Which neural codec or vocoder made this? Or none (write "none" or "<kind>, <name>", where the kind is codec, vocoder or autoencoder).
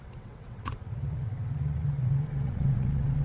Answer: vocoder, WaveNeXt